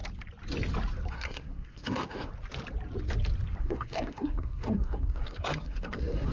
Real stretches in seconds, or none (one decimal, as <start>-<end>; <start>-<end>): 0.0-1.1; 2.3-3.6